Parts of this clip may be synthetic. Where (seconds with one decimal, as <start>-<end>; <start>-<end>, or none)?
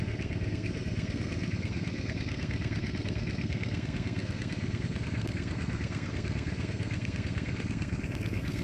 0.0-8.6